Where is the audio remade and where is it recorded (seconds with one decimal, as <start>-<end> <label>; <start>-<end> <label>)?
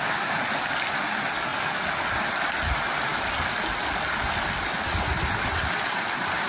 0.0-6.5 recorded